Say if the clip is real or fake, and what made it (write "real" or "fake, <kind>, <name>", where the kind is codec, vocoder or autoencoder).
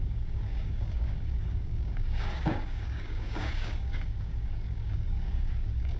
fake, codec, DAC